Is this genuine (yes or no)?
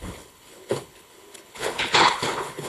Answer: no